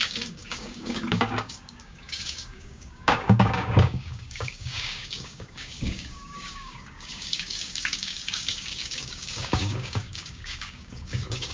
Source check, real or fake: fake